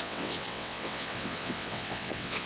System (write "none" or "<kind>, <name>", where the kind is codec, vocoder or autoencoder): vocoder, WaveNeXt